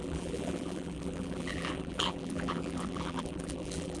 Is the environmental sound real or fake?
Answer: fake